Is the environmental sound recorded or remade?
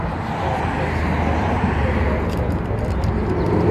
recorded